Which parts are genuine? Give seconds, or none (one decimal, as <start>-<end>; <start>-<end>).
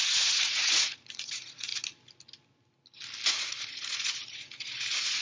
1.7-3.3